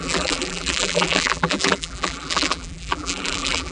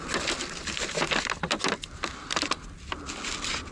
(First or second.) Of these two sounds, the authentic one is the second